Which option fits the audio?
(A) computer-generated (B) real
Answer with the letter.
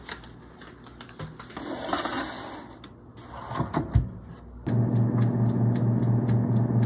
B